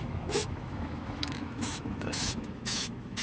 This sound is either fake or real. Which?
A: fake